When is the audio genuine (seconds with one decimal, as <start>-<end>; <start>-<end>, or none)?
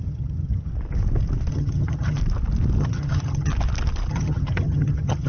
0.7-1.5; 2.2-2.8; 3.5-4.1